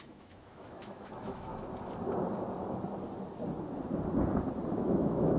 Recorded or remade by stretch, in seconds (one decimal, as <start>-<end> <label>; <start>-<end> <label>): 0.0-1.5 remade; 1.5-4.7 recorded; 4.7-5.4 remade